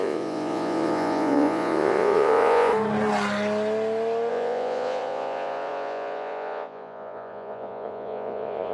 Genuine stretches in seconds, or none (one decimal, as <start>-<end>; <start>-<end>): 2.7-4.3